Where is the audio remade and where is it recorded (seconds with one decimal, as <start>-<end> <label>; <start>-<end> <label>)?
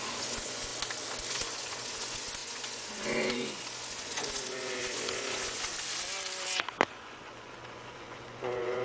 0.0-0.7 remade; 0.7-1.3 recorded; 1.3-5.7 remade; 5.7-6.7 recorded; 6.7-8.8 remade